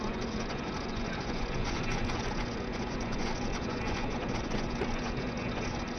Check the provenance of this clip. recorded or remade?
remade